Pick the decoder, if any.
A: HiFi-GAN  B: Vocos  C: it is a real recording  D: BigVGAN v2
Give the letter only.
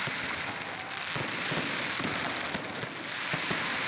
C